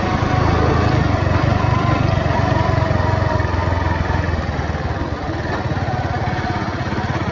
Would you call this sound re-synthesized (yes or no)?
no